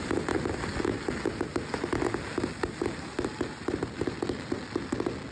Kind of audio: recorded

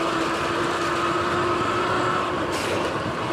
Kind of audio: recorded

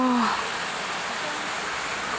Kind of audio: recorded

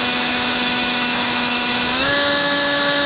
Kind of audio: remade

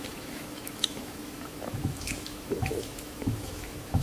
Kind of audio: remade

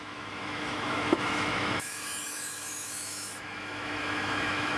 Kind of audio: remade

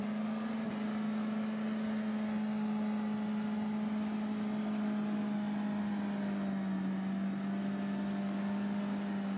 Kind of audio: recorded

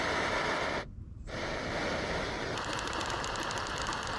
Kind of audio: recorded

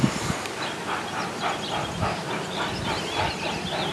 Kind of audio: recorded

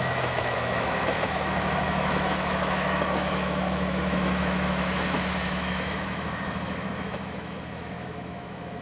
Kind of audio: remade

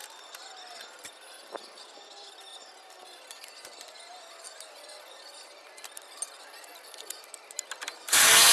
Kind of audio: recorded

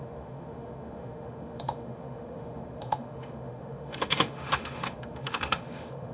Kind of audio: remade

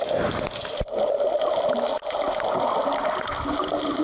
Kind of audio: recorded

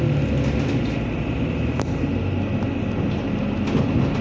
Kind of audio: recorded